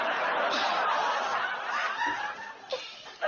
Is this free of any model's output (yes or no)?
yes